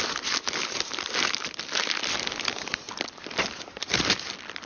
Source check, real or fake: fake